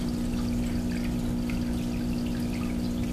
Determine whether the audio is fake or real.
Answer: real